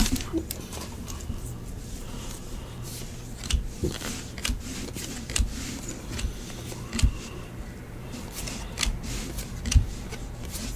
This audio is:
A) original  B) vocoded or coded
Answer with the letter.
B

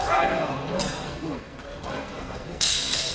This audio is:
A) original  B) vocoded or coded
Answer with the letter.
B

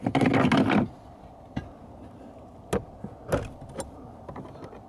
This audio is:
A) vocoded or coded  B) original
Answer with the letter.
B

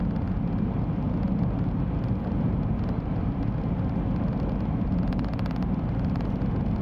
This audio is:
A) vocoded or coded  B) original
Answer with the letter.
B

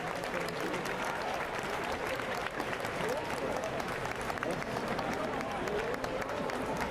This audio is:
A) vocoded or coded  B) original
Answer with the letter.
A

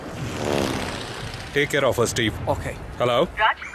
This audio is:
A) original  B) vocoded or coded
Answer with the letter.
A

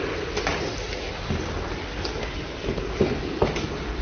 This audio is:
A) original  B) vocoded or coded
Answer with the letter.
A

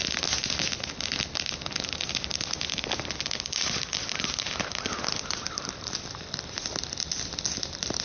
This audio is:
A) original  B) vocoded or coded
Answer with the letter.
A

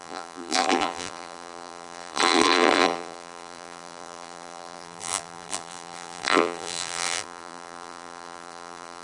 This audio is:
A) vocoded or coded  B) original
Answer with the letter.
A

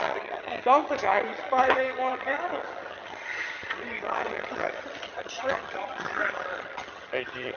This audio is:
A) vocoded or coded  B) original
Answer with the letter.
A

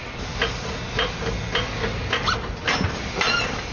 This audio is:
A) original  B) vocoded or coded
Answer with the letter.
A